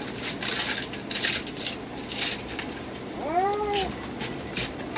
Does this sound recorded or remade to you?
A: recorded